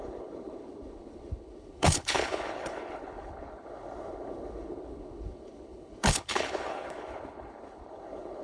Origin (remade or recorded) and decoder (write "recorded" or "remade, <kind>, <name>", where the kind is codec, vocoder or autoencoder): remade, codec, HILCodec